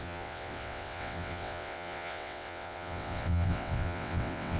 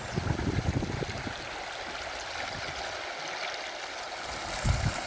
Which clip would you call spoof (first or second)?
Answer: first